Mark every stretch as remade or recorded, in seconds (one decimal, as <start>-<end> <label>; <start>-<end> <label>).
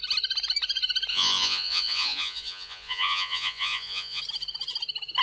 0.0-1.1 recorded; 1.1-4.2 remade; 4.2-5.2 recorded